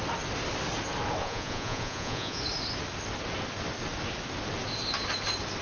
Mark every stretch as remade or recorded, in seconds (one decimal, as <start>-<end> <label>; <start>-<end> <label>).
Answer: 0.0-1.2 recorded; 1.2-2.4 remade; 2.4-5.6 recorded